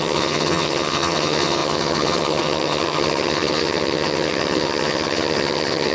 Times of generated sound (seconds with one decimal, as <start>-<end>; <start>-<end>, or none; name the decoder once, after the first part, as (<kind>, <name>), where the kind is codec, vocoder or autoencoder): 0.0-5.9 (vocoder, HiFi-GAN)